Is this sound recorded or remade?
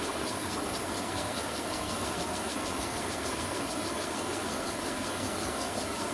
remade